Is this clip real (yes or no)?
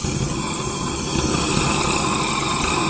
yes